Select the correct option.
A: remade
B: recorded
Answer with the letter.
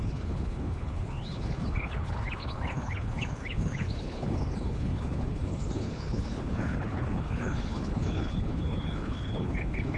A